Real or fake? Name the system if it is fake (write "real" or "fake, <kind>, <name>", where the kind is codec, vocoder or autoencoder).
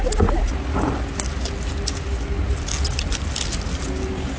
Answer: real